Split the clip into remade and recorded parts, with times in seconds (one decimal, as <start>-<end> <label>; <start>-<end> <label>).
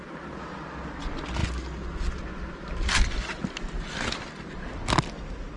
0.0-5.6 recorded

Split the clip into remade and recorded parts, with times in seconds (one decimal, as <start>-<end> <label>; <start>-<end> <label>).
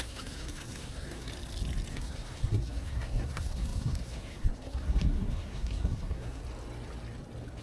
0.0-1.3 remade; 1.3-1.9 recorded; 1.9-6.4 remade; 6.4-7.6 recorded